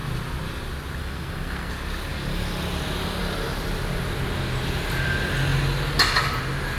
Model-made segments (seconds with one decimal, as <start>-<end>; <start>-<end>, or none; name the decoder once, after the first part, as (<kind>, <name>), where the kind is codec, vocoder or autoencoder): 1.0-1.7 (codec, SNAC)